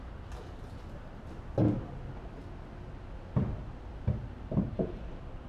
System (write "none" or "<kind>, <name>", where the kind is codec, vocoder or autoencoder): none